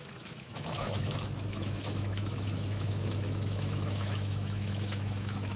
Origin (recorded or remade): remade